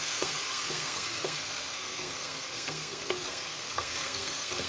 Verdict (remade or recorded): remade